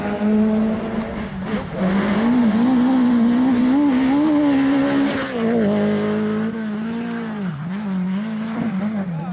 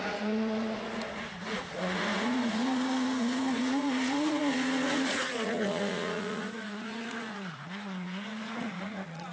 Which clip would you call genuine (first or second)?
first